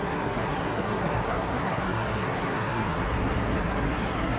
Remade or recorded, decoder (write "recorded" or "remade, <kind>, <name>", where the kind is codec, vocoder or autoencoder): remade, codec, SNAC